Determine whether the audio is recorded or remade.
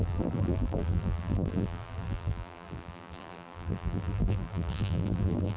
remade